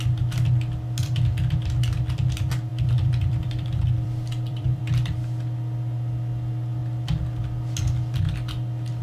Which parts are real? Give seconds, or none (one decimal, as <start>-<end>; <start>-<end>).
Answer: 0.0-2.7; 4.8-9.0